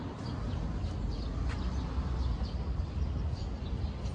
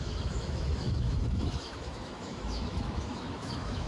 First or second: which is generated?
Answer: second